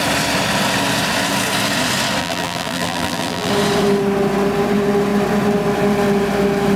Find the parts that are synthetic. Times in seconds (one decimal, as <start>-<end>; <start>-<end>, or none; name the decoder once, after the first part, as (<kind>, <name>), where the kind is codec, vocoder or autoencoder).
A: 2.2-3.5 (vocoder, BigVGAN v2)